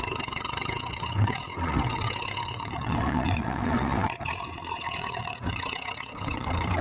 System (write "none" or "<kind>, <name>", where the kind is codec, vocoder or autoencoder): vocoder, WaveNeXt